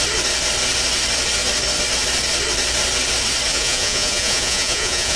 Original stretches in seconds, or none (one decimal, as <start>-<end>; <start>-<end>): 0.0-3.5